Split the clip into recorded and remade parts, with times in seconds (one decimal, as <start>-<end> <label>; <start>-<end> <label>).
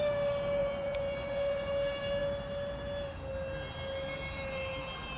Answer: 0.0-0.6 recorded; 0.6-1.7 remade; 1.7-5.2 recorded